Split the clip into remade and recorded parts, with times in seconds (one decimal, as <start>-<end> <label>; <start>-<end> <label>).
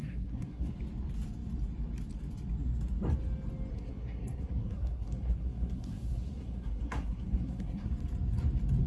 0.0-0.7 remade; 0.7-3.7 recorded; 3.7-7.9 remade; 7.9-8.9 recorded